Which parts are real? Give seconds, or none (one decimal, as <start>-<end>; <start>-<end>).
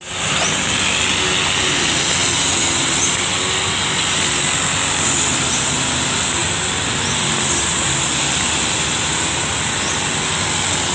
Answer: 0.0-10.9